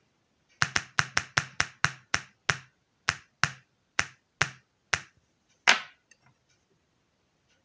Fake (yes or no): no